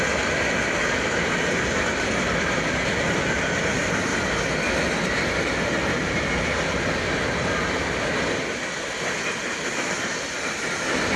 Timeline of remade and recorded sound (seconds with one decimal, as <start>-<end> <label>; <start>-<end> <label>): 0.0-11.2 recorded